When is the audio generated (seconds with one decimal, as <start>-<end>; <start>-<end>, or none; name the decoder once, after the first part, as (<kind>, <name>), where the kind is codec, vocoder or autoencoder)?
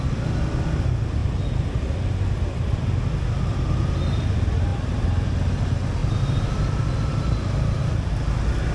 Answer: 6.0-7.8 (vocoder, BigVGAN v2)